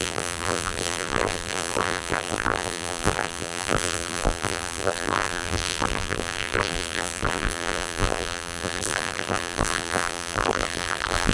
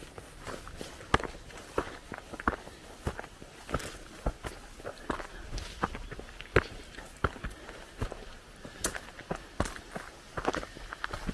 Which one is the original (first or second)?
second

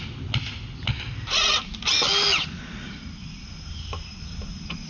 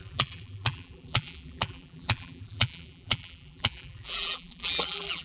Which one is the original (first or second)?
first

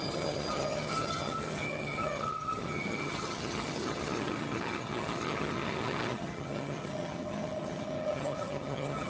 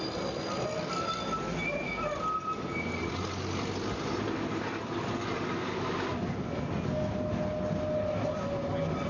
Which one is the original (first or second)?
second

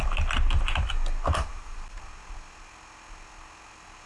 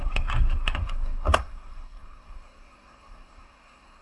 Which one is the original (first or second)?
first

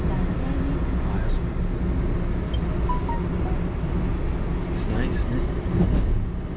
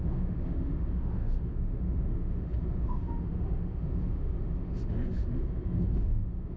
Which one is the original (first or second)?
first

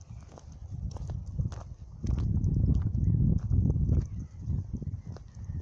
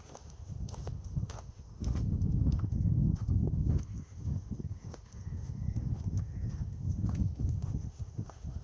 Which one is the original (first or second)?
first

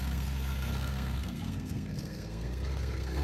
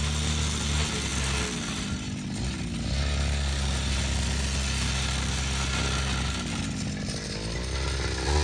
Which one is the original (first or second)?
second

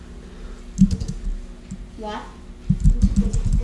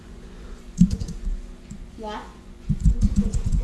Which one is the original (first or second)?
first